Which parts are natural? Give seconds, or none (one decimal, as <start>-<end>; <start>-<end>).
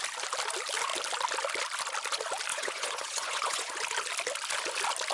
0.0-2.5; 3.7-5.1